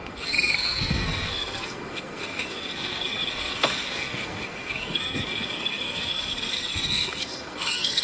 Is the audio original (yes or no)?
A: no